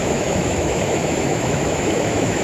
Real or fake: fake